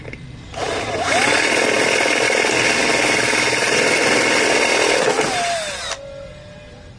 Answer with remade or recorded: recorded